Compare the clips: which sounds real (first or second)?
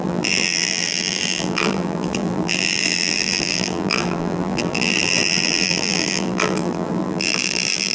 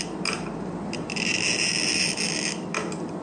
second